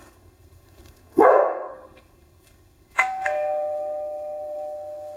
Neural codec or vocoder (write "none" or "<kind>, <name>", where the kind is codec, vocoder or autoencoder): codec, SNAC